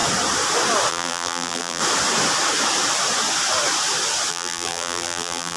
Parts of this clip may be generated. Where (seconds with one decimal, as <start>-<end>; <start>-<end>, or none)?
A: 0.9-1.8; 4.3-5.6